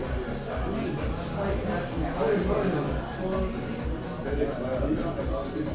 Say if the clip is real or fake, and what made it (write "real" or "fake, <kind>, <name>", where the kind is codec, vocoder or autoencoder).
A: real